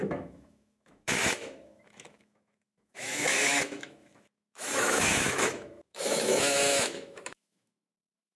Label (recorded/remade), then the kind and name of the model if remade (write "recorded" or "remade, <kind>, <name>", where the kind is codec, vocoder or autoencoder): remade, autoencoder, DAC-VAE